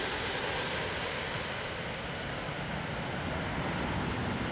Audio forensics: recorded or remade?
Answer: recorded